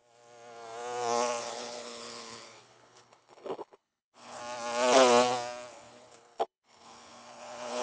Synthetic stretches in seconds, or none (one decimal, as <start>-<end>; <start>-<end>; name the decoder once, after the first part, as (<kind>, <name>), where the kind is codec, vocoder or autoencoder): 1.4-4.4 (codec, HILCodec); 5.7-7.8